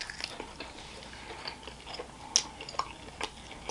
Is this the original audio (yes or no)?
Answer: yes